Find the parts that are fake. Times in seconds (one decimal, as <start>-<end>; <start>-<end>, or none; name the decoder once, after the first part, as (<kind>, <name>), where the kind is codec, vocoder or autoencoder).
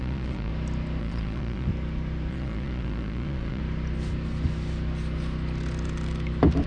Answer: 0.0-0.5 (vocoder, Vocos); 1.0-1.7; 2.3-3.6